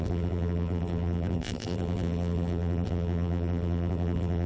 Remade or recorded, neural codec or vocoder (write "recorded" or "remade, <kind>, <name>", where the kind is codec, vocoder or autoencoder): remade, vocoder, BigVGAN v2